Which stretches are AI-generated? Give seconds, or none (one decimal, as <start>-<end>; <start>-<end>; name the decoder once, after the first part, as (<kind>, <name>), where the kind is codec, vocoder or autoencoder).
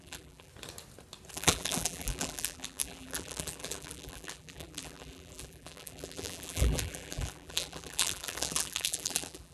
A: 0.0-0.5 (vocoder, BigVGAN v2); 1.3-9.5